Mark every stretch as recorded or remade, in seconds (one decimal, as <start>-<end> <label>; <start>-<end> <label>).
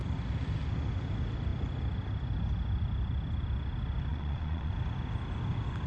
0.0-4.1 recorded; 4.1-4.7 remade; 4.7-5.9 recorded